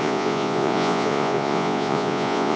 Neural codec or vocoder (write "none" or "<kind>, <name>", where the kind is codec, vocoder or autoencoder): vocoder, Vocos